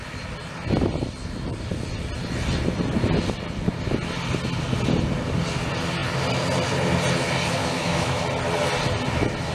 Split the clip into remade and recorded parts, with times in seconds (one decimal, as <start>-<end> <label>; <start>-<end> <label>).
0.0-7.6 recorded; 7.6-8.2 remade; 8.2-9.5 recorded